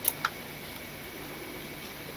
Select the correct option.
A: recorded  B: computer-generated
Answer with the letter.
A